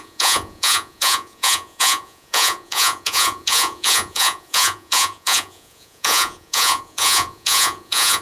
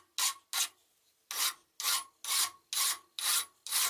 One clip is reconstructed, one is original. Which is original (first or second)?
second